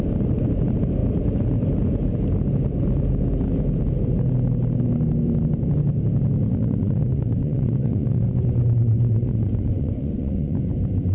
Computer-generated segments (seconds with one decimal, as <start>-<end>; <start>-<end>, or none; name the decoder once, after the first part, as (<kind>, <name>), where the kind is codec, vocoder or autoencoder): 6.5-10.7 (vocoder, Vocos)